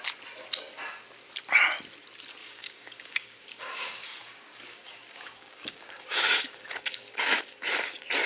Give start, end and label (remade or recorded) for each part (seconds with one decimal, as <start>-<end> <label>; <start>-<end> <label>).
0.0-2.4 recorded; 2.4-7.4 remade; 7.4-8.3 recorded